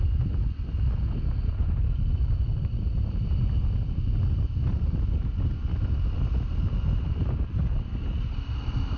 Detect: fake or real real